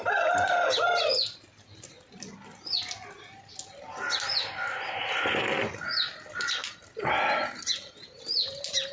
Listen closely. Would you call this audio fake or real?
real